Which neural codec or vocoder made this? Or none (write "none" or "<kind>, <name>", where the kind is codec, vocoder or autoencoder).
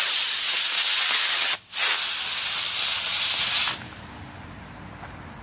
none